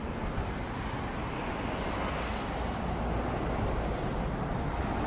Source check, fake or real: real